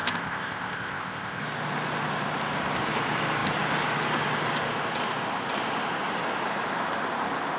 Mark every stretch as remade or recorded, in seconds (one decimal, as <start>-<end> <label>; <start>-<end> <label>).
0.0-1.4 remade; 1.4-7.6 recorded